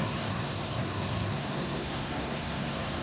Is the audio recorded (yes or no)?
no